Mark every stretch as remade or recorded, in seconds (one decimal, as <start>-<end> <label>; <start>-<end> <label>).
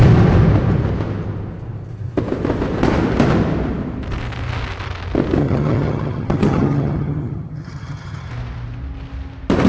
0.0-5.4 recorded; 5.4-8.3 remade; 8.3-9.7 recorded